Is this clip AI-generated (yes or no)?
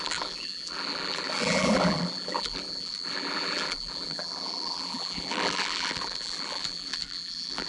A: yes